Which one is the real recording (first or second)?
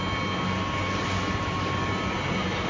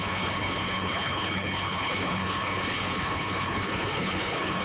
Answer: first